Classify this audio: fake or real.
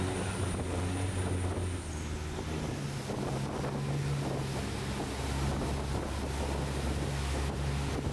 real